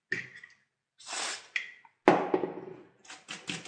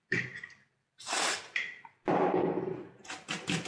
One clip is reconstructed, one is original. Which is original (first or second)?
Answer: first